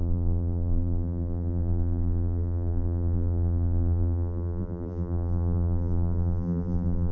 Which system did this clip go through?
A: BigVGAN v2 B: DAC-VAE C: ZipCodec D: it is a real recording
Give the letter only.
A